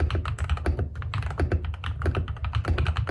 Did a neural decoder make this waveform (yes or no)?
no